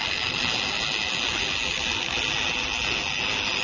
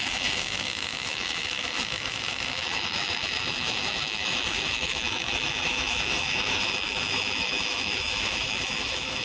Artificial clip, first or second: second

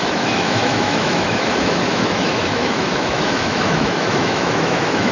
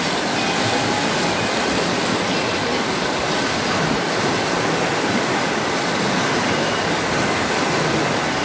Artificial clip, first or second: first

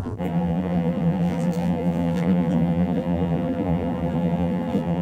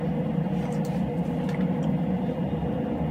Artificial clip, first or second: first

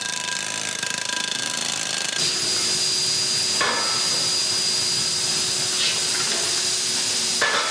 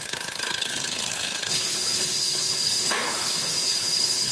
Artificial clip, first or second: second